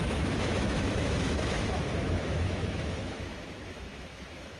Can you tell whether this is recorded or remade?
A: remade